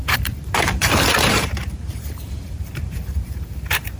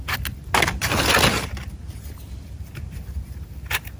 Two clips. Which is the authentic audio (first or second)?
second